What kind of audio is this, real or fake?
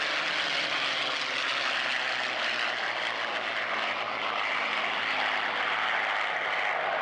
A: real